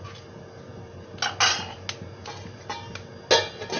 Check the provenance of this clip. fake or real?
real